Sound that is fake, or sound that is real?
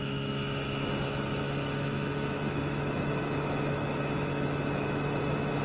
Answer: fake